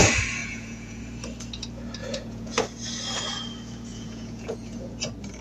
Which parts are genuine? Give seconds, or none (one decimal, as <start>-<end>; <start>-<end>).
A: 0.0-0.4; 1.0-2.0; 2.6-3.9; 4.9-5.4